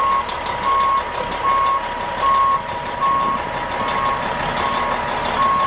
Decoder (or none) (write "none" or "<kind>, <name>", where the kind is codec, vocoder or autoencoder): none